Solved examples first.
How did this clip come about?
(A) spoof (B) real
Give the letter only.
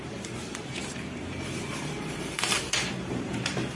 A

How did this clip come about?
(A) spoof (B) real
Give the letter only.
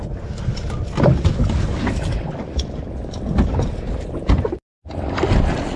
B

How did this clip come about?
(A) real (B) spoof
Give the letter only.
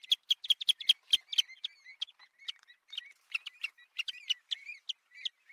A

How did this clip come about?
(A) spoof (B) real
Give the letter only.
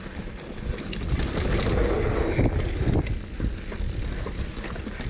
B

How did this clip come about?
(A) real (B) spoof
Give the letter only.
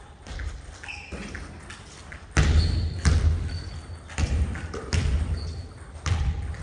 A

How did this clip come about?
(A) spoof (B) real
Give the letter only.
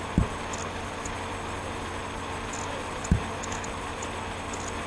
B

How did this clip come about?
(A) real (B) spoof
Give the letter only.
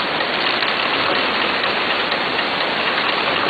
A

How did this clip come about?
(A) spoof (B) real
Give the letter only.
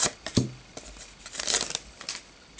B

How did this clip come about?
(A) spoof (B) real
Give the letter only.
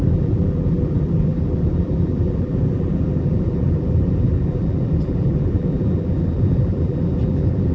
A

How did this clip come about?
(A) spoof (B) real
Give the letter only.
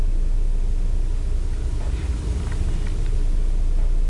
B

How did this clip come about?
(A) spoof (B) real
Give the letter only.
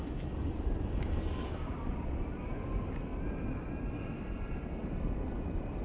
B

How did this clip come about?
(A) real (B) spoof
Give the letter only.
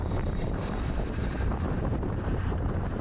B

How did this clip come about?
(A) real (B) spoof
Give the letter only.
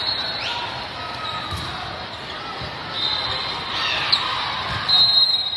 A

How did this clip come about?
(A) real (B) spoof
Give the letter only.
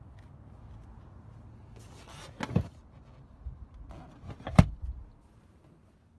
A